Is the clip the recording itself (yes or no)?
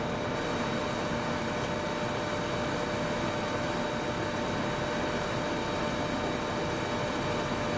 yes